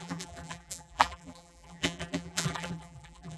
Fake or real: fake